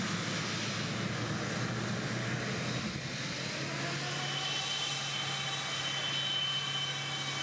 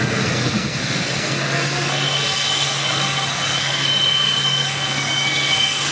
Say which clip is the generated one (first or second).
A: second